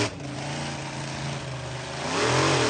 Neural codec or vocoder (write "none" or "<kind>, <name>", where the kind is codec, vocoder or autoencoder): none